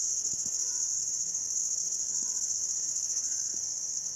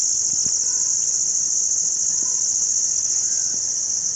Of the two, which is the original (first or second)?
second